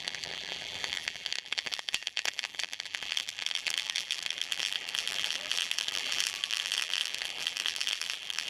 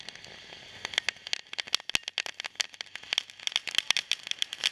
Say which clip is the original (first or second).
second